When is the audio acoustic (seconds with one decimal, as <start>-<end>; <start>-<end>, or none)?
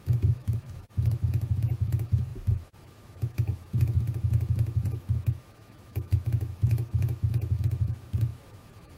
none